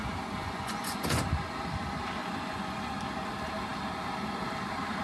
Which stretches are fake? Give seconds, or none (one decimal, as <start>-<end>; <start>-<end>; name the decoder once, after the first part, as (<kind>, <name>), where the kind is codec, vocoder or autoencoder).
0.4-1.2 (vocoder, Vocos); 2.2-2.8